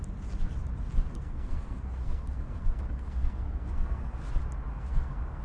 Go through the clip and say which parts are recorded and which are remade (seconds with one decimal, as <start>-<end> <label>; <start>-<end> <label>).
0.0-1.1 recorded; 1.1-4.3 remade; 4.3-4.7 recorded; 4.7-5.4 remade